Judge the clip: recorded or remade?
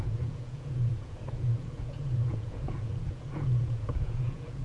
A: remade